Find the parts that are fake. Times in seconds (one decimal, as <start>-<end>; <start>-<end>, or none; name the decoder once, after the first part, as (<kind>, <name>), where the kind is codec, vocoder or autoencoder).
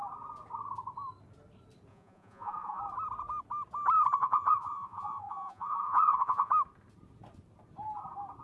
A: 1.9-2.8 (vocoder, Vocos); 4.2-6.5